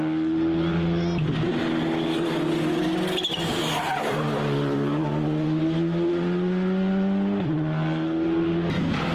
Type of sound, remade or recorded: recorded